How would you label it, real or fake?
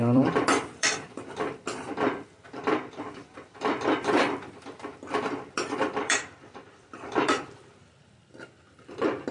fake